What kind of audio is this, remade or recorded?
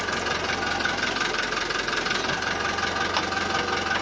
recorded